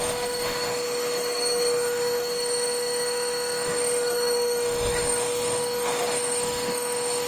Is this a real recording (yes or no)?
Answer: no